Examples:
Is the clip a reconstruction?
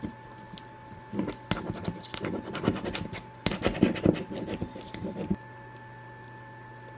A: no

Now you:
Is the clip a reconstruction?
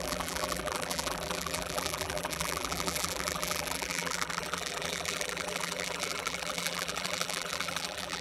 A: yes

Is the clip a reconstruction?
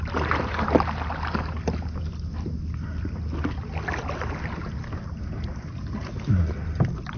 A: no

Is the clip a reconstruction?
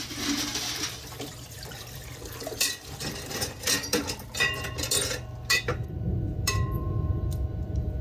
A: yes